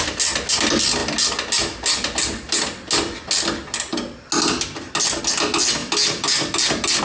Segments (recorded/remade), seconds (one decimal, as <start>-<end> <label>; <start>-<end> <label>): 0.0-7.0 recorded